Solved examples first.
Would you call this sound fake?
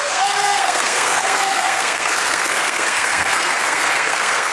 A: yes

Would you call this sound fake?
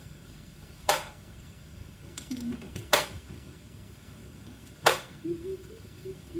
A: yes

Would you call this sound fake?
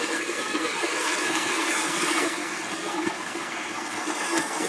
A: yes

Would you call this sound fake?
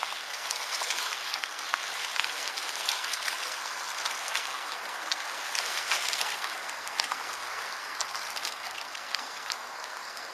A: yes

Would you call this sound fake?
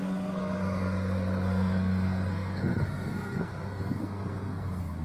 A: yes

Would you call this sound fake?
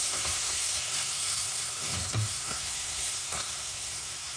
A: yes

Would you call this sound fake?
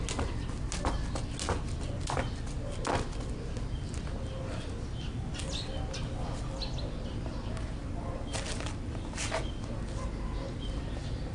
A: no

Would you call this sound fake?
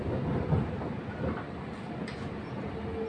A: no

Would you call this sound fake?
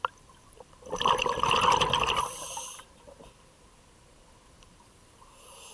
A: no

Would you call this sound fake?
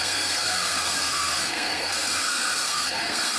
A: yes